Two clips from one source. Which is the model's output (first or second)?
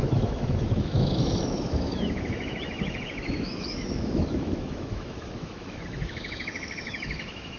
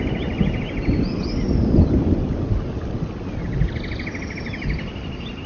first